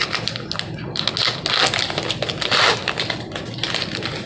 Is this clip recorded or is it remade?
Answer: recorded